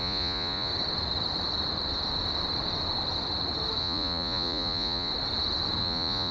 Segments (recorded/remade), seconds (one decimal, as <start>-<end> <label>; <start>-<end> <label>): 0.0-0.7 remade; 0.7-3.8 recorded; 3.8-5.1 remade; 5.1-5.8 recorded; 5.8-6.3 remade